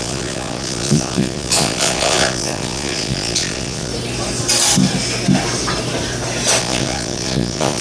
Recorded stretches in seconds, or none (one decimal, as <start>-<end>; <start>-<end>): 3.9-6.6